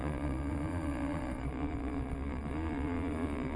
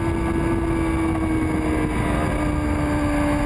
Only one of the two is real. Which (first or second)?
second